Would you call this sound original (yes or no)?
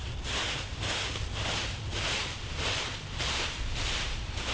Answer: yes